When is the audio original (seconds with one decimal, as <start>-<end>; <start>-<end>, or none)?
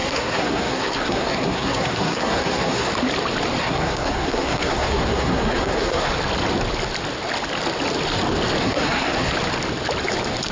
2.9-3.6; 6.1-8.6; 9.3-10.5